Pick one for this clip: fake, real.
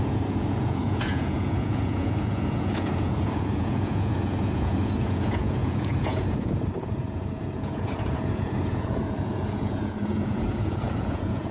fake